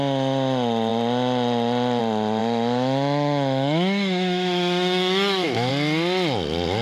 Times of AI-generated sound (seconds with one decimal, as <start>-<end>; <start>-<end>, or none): 2.4-5.7